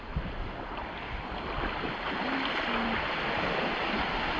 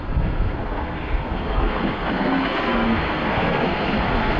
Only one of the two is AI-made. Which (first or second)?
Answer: second